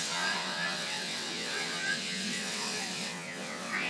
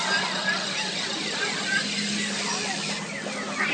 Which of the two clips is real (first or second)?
second